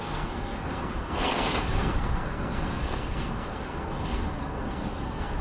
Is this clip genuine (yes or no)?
no